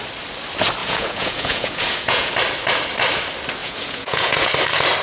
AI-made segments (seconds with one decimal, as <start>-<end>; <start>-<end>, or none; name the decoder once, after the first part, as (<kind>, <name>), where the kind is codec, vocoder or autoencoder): 0.8-2.3 (vocoder, Vocos); 3.6-4.5